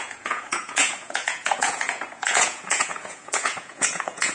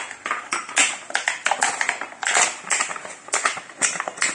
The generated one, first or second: first